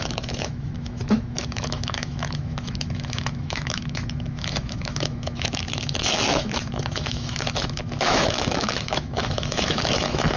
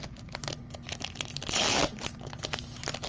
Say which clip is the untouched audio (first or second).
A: second